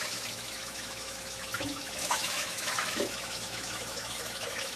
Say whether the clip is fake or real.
fake